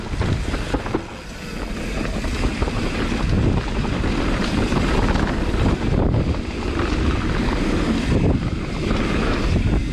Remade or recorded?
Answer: recorded